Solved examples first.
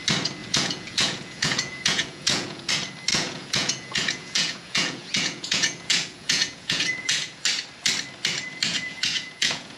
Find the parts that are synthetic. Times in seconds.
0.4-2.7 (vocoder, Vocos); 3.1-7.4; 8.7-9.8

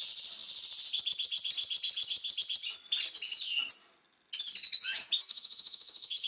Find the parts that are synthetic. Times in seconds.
4.8-6.3 (autoencoder, DAC-VAE)

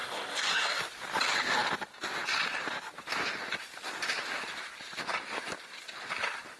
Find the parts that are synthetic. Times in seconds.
0.0-0.8 (codec, DAC)

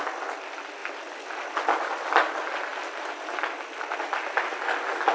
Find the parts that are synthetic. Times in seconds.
none

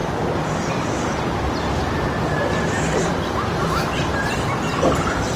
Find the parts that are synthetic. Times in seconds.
none

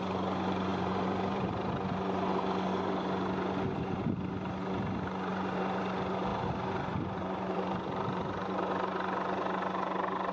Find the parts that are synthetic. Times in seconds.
0.7-1.7 (vocoder, BigVGAN v2); 5.3-5.8; 6.3-8.6